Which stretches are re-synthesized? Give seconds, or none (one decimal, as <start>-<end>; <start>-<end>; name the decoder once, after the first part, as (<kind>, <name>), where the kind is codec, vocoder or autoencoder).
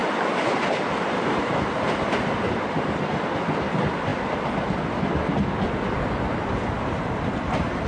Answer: none